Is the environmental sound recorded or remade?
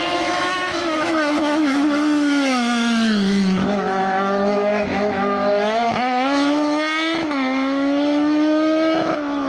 remade